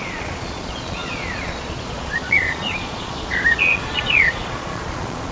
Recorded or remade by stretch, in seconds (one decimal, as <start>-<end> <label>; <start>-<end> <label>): 0.0-5.3 remade